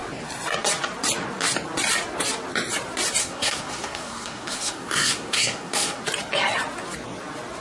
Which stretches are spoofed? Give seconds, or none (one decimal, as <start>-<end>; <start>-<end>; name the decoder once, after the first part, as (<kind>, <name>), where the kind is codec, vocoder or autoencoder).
3.2-6.0 (codec, SNAC)

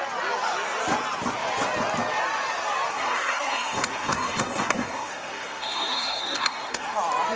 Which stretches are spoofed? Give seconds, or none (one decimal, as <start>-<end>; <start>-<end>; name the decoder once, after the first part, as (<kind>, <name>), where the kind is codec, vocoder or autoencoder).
2.9-7.0 (codec, SNAC)